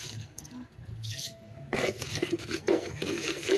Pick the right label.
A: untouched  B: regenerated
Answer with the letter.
B